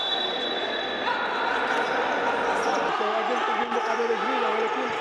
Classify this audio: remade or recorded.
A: recorded